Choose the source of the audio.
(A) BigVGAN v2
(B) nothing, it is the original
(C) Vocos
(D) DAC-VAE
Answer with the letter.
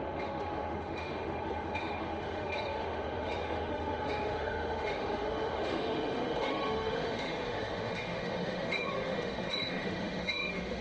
D